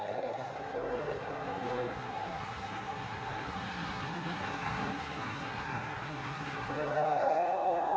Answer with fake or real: fake